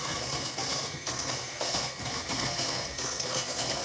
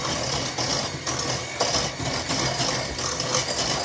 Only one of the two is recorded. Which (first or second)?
second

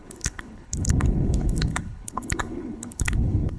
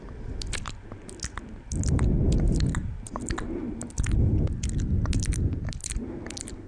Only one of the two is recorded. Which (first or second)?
second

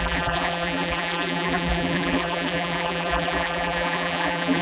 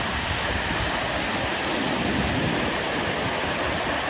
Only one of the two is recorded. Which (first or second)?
second